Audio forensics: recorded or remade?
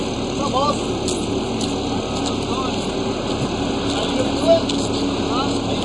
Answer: recorded